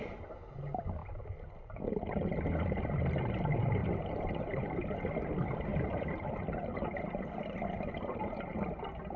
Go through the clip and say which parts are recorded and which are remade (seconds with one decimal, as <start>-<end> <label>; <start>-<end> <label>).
0.0-3.8 recorded; 3.8-4.6 remade; 4.6-5.7 recorded; 5.7-6.4 remade; 6.4-9.2 recorded